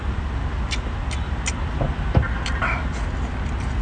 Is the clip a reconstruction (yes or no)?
no